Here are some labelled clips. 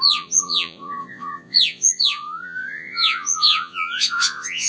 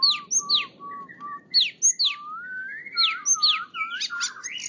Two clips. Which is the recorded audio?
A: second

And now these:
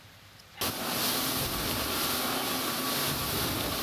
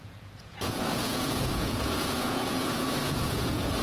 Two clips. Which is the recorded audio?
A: first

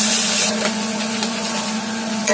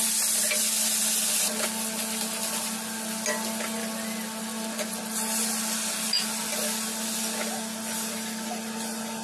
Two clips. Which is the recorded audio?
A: second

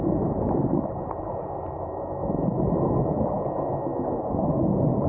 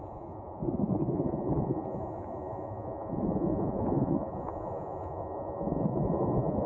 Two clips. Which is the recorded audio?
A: first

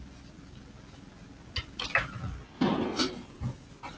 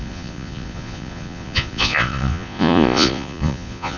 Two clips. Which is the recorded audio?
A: first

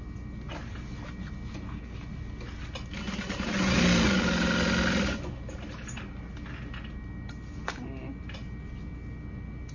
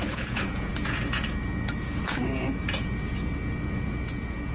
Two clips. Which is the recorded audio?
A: first